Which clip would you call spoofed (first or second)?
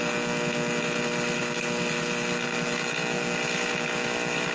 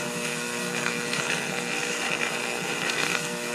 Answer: second